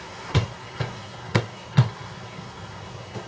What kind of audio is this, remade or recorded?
remade